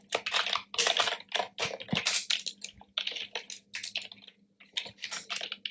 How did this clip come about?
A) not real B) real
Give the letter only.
B